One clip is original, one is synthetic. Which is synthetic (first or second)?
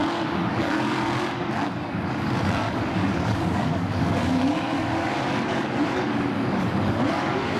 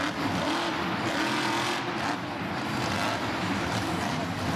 first